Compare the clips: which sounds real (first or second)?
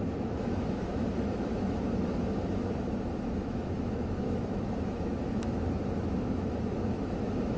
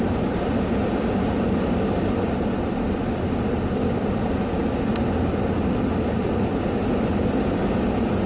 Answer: second